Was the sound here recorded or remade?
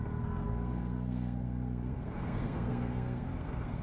remade